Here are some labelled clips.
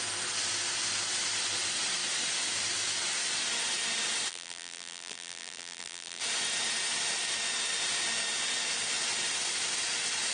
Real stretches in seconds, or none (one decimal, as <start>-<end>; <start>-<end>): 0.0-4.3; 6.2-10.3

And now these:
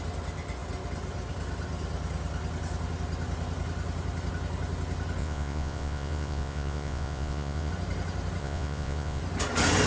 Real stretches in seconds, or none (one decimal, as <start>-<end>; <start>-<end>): 0.0-5.2; 7.7-8.4; 9.2-9.9

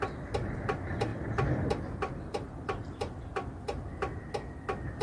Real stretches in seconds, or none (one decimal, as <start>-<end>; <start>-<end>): 0.0-5.0

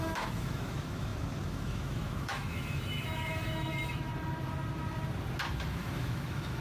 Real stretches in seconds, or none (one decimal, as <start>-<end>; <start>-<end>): 4.1-5.5

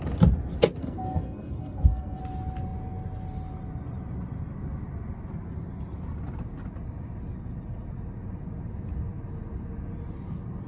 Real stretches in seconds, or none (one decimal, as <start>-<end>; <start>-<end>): 0.0-0.8; 2.2-10.7

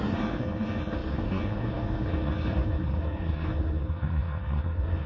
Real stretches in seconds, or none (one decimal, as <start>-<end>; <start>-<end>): none

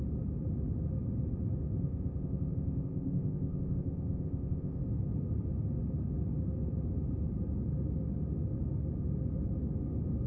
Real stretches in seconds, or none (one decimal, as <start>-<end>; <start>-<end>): 0.0-1.8; 4.8-10.3

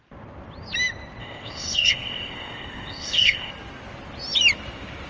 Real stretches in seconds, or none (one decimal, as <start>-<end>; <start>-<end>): 0.0-1.2; 3.5-5.1